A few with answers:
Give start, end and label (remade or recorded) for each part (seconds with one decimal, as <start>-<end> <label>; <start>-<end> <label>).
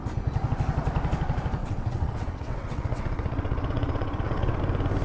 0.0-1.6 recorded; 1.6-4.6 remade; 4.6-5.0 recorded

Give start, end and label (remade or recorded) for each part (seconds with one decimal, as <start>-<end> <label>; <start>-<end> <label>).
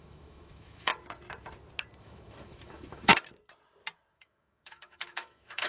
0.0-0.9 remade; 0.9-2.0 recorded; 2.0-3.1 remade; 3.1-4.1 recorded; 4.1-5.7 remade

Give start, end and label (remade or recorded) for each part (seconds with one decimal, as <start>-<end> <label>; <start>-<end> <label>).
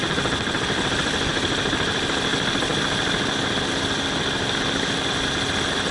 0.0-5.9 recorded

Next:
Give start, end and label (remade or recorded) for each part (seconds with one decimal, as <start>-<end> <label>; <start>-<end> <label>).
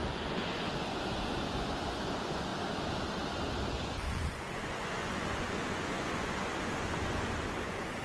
0.0-2.5 remade; 2.5-3.7 recorded; 3.7-8.0 remade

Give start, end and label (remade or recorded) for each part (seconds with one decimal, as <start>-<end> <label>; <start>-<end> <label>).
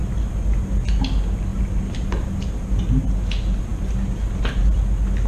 0.0-5.3 recorded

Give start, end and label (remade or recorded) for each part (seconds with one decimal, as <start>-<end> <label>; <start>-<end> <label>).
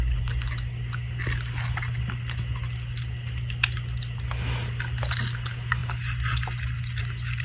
0.0-7.4 recorded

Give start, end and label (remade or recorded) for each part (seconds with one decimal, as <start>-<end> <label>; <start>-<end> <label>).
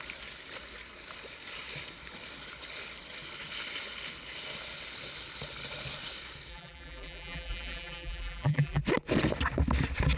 0.0-6.5 recorded; 6.5-8.8 remade; 8.8-10.2 recorded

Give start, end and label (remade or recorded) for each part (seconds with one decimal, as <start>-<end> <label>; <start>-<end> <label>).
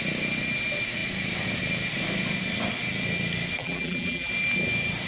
0.0-3.6 recorded; 3.6-4.3 remade; 4.3-5.1 recorded